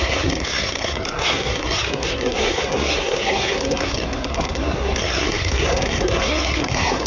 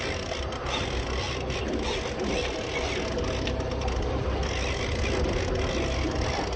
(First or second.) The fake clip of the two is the first